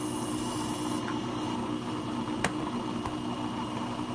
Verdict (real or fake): real